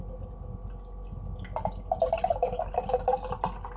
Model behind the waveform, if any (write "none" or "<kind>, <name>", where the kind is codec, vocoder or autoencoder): none